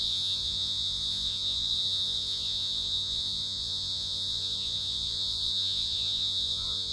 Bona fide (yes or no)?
no